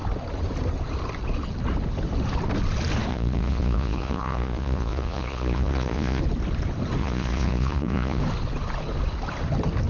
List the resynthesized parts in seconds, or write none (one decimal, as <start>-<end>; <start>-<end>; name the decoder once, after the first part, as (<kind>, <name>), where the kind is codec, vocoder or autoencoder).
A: 3.1-6.2 (vocoder, Vocos); 7.0-8.2

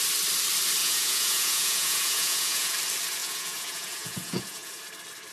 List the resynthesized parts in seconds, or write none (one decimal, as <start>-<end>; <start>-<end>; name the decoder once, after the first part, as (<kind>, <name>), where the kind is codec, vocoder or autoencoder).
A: 0.8-2.7 (vocoder, Vocos); 3.2-4.8